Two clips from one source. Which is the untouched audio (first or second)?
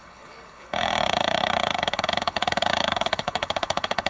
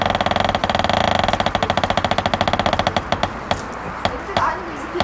second